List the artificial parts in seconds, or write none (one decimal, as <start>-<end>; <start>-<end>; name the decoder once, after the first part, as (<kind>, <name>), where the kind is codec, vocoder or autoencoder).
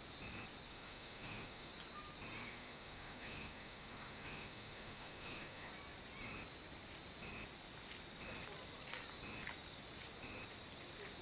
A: 0.7-1.7 (autoencoder, DAC-VAE); 2.4-5.7